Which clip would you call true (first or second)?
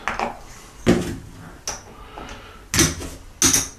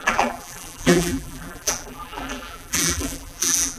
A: first